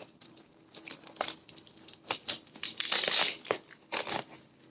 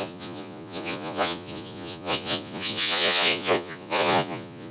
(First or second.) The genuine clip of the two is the first